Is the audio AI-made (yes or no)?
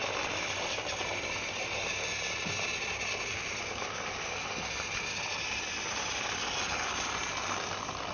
no